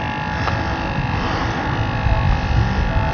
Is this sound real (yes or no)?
yes